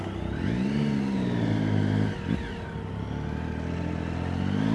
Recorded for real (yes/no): yes